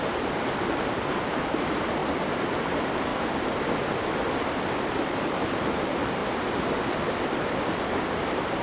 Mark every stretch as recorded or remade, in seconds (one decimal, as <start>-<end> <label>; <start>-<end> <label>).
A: 0.0-2.0 remade; 2.0-2.5 recorded; 2.5-3.1 remade; 3.1-4.9 recorded; 4.9-6.2 remade; 6.2-8.2 recorded; 8.2-8.6 remade